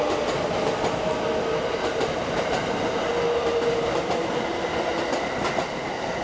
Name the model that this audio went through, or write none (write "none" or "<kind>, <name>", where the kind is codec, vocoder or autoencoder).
none